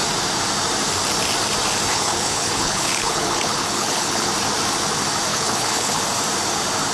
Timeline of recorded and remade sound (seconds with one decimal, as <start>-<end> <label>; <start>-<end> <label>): 0.0-1.9 recorded; 1.9-4.3 remade; 4.3-5.3 recorded; 5.3-6.0 remade; 6.0-6.9 recorded